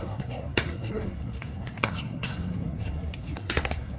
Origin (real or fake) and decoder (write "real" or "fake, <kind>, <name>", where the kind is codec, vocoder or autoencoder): fake, codec, SNAC